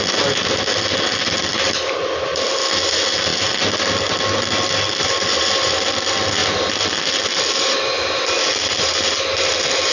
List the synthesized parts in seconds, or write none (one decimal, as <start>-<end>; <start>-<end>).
none